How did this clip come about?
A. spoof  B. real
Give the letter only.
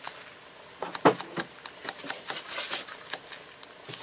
B